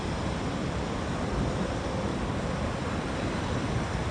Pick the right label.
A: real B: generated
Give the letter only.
B